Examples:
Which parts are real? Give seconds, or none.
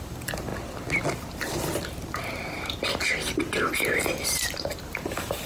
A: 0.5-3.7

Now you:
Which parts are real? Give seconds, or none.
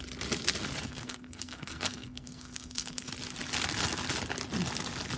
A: 0.0-0.8; 3.1-5.2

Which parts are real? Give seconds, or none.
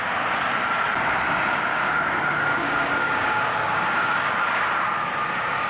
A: 0.0-1.7; 4.3-5.7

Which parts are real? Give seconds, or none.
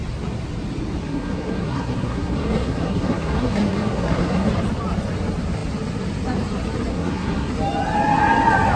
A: 0.0-1.0; 4.5-6.9; 7.5-8.8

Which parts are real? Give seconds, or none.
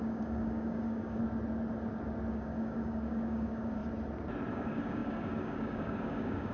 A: 1.2-2.3; 3.8-4.5